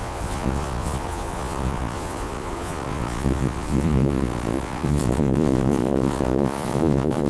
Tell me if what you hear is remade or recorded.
remade